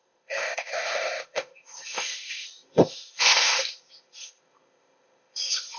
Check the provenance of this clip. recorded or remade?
remade